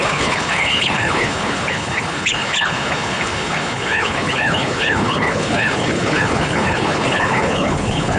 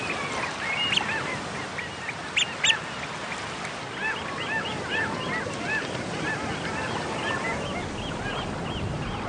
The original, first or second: second